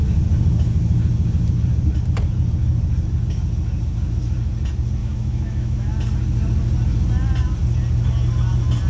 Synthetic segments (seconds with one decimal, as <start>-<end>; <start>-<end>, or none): 5.0-5.9